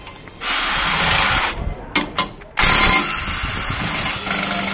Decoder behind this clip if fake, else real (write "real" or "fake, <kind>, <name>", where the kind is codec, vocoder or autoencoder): real